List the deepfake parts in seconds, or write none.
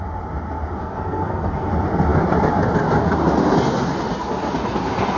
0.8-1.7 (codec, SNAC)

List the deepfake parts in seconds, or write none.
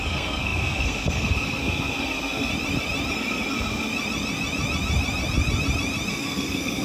0.0-2.5 (codec, SNAC); 3.1-3.9; 6.1-6.8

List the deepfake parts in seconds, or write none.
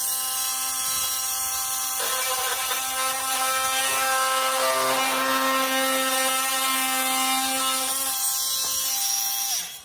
none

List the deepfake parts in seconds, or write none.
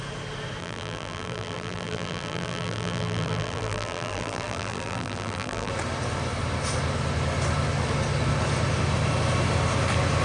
0.6-5.7 (vocoder, BigVGAN v2)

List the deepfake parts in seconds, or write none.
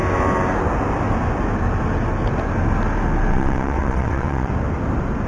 3.3-4.5 (vocoder, WaveNeXt)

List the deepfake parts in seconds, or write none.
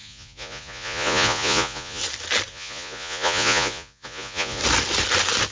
0.0-2.0 (vocoder, Vocos); 2.5-4.6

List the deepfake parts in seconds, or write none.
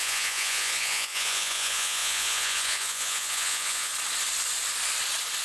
0.0-3.9 (vocoder, Vocos)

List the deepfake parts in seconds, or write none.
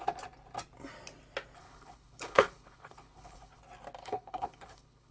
1.6-3.6 (codec, HILCodec); 4.0-5.1